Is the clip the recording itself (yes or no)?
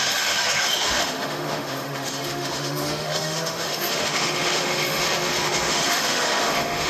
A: no